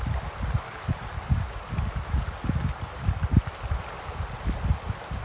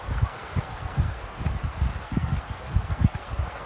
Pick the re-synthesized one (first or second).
second